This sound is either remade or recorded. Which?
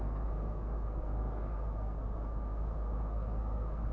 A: remade